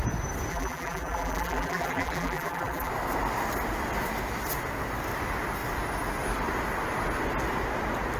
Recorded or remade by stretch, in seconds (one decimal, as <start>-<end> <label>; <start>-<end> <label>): 0.0-0.5 recorded; 0.5-2.9 remade; 2.9-8.2 recorded